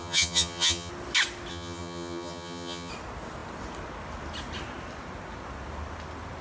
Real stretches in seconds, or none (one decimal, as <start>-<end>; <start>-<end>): 0.9-1.5; 2.9-6.4